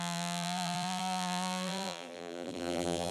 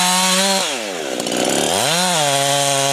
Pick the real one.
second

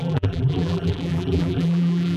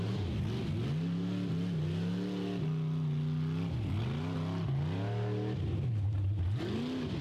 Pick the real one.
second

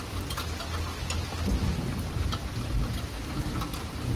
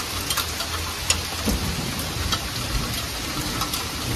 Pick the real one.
first